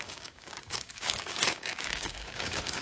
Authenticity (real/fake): fake